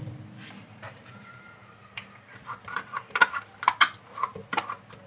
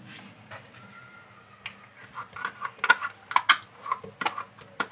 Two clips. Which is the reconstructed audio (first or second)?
first